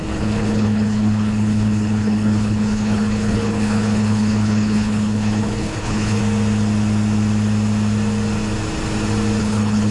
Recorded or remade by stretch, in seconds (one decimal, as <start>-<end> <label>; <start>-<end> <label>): 0.0-6.2 remade; 6.2-9.4 recorded; 9.4-9.9 remade